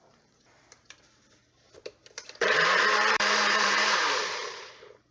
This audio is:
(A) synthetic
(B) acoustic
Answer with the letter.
A